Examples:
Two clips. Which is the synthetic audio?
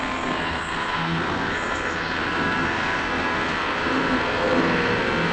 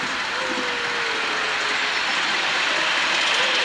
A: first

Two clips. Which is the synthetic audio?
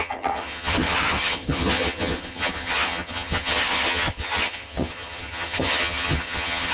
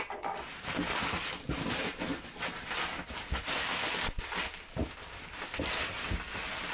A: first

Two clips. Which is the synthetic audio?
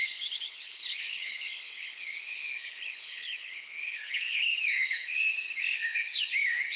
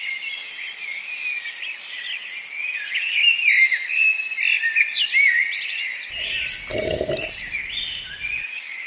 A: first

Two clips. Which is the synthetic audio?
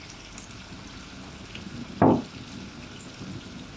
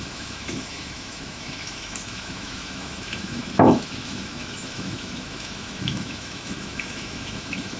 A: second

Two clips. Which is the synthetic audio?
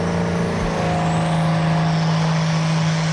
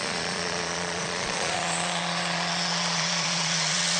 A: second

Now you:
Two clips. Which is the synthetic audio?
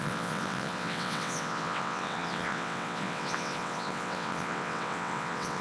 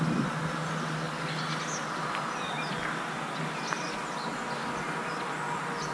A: first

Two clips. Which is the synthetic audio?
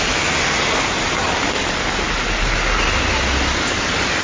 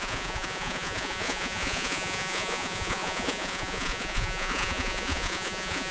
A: second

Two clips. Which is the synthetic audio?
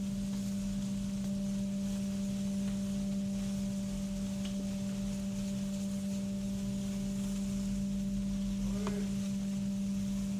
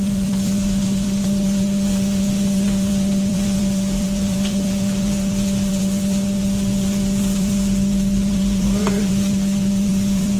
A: second